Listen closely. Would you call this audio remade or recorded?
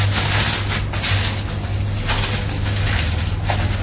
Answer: recorded